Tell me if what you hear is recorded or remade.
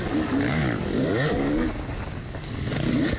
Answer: remade